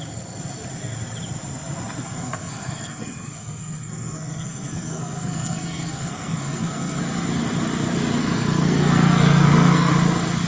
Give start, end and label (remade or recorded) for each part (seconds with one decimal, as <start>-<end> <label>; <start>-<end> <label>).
0.0-2.0 recorded; 2.0-7.0 remade; 7.0-8.2 recorded; 8.2-9.9 remade; 9.9-10.5 recorded